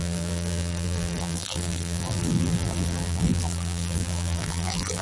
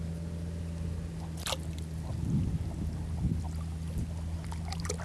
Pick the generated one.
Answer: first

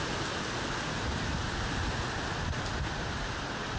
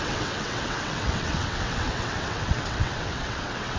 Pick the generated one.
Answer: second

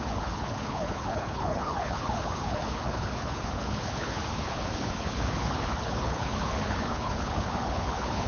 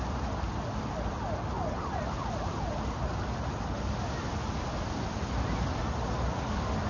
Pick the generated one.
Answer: first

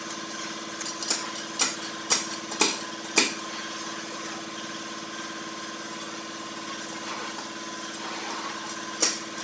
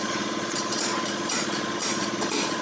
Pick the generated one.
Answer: second